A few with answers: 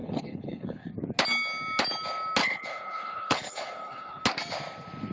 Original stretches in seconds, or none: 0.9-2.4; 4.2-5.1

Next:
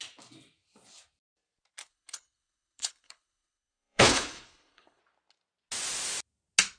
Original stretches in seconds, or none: 0.0-1.8; 5.0-6.8

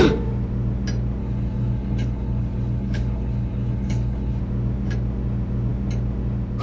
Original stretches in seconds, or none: 0.0-1.2; 4.4-6.6

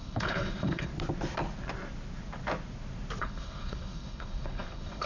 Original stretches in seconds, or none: 0.9-3.2

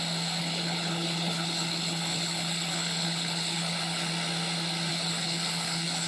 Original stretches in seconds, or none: 0.0-0.4; 4.1-4.9